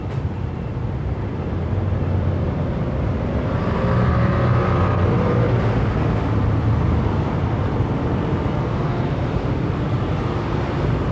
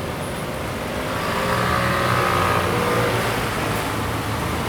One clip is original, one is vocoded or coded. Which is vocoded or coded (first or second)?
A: first